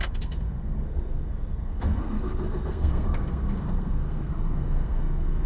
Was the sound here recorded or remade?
remade